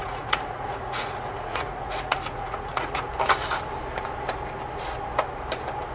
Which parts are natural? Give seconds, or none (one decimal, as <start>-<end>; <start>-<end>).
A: 3.1-5.9